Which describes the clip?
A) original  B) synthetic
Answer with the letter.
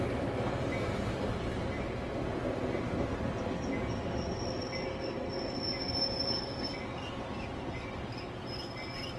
A